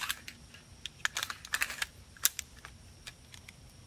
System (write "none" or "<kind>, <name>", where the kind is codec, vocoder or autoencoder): none